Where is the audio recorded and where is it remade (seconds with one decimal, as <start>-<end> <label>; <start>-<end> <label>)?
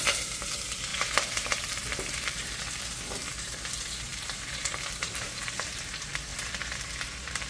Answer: 0.0-7.5 remade